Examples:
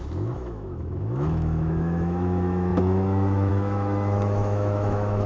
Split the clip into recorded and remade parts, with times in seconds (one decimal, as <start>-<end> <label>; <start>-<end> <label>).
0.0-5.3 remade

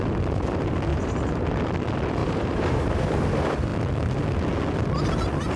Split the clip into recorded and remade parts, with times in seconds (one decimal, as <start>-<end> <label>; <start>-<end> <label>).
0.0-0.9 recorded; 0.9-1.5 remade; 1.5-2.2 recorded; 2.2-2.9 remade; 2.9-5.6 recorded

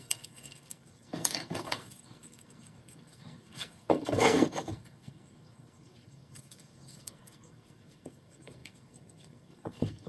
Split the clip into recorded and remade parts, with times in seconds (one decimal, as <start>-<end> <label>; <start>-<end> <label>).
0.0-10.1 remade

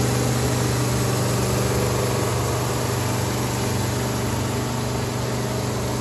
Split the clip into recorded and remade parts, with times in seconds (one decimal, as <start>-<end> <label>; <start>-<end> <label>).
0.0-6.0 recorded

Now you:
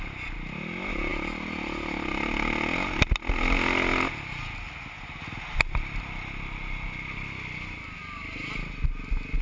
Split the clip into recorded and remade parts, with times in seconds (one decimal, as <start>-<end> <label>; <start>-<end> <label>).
0.0-9.4 recorded

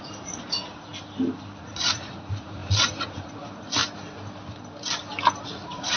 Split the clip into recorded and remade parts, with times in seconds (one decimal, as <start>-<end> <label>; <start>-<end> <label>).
0.0-0.9 remade; 0.9-1.6 recorded; 1.6-3.8 remade; 3.8-5.4 recorded; 5.4-6.0 remade